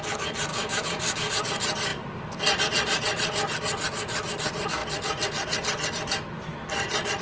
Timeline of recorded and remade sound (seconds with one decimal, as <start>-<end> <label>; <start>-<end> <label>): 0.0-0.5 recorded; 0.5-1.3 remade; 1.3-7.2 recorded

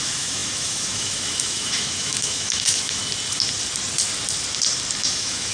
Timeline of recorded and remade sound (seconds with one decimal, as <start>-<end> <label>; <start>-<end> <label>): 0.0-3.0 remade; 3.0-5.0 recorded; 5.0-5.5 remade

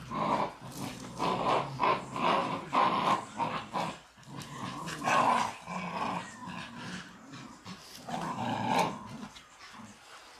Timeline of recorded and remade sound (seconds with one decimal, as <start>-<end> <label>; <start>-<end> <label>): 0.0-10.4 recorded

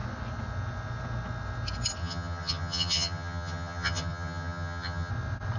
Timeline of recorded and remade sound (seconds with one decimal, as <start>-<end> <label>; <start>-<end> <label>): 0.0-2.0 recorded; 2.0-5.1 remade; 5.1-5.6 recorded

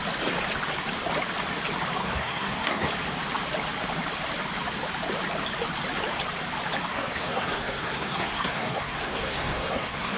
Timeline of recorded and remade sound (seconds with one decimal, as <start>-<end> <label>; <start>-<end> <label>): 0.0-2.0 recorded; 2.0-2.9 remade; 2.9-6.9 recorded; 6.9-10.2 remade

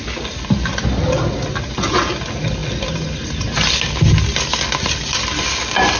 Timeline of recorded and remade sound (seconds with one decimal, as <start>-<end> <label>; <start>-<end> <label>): 0.0-6.0 recorded

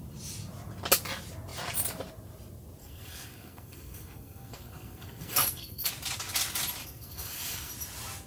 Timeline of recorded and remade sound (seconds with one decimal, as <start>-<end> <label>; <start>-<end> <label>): 0.0-2.8 recorded; 2.8-5.9 remade; 5.9-6.8 recorded; 6.8-7.7 remade; 7.7-8.3 recorded